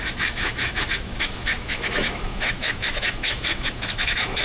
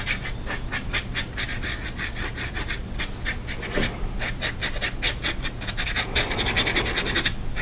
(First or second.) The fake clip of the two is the first